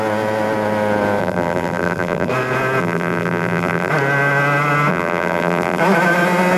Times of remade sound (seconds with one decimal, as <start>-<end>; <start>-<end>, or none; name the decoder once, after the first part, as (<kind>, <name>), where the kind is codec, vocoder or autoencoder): 1.2-2.3 (vocoder, BigVGAN v2); 2.8-3.9; 4.9-5.8